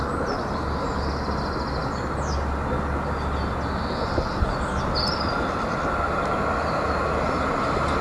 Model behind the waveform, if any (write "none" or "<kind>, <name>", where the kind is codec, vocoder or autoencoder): none